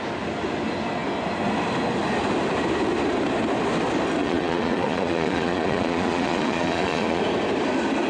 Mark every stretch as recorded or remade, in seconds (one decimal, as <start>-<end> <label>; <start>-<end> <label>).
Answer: 0.0-4.2 recorded; 4.2-7.2 remade; 7.2-8.1 recorded